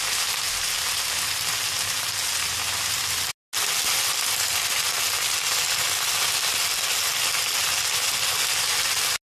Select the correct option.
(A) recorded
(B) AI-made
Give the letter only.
A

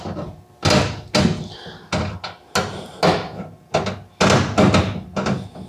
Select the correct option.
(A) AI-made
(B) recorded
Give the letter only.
B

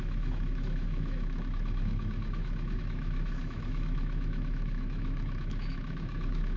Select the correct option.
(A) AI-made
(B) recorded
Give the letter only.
A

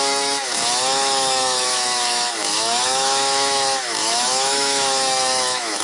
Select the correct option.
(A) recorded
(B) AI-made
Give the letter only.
B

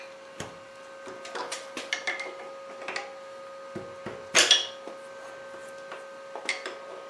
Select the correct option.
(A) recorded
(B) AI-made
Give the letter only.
A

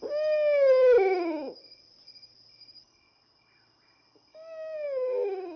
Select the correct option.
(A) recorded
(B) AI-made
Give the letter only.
A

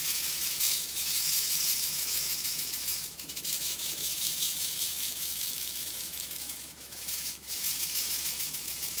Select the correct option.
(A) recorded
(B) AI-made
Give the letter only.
B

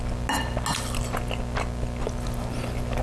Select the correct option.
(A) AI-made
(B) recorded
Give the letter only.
B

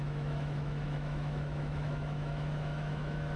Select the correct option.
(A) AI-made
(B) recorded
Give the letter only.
A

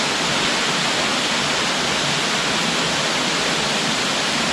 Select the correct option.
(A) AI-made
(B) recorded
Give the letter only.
B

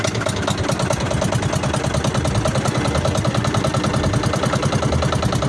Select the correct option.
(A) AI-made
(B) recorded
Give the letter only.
B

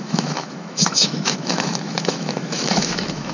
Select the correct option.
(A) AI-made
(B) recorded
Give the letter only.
A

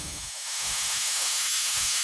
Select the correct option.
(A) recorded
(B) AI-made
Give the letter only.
B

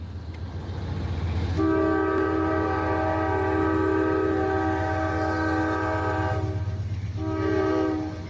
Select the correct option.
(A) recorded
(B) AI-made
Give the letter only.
A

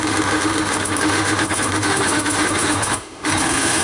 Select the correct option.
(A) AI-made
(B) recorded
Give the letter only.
A